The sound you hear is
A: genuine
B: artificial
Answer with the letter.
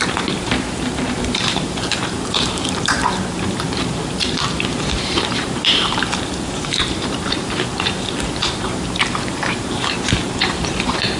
B